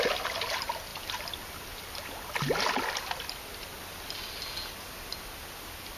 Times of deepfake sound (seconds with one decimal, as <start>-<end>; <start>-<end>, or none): none